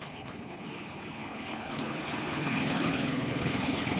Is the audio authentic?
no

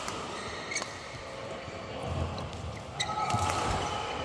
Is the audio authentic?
yes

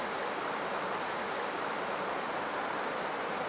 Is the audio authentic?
yes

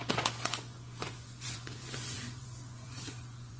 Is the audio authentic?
no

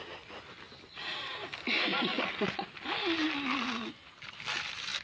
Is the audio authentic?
yes